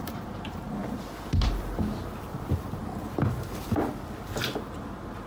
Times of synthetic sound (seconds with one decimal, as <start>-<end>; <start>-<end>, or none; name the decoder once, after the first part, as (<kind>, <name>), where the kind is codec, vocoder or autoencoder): 0.0-0.8 (vocoder, BigVGAN v2); 2.2-2.8